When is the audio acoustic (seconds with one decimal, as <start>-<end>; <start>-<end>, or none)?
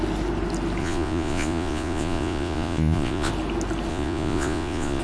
0.0-0.8; 3.3-3.9